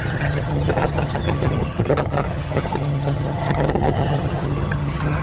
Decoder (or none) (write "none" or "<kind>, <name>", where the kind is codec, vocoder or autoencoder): vocoder, HiFi-GAN